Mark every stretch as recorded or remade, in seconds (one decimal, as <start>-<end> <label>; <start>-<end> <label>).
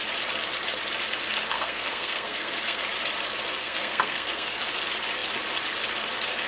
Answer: 0.0-1.5 recorded; 1.5-2.8 remade; 2.8-3.6 recorded; 3.6-4.6 remade; 4.6-6.5 recorded